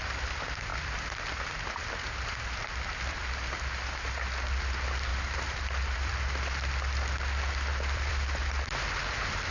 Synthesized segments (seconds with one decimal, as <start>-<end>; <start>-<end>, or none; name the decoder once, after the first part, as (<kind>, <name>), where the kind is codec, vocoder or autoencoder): 5.1-6.1 (vocoder, BigVGAN v2); 7.7-8.6

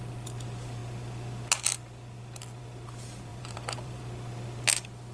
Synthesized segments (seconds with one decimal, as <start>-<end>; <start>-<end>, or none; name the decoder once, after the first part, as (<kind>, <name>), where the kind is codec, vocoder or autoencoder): 3.3-4.0 (vocoder, BigVGAN v2)